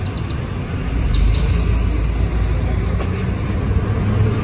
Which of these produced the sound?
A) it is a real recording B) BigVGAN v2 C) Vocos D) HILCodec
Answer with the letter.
A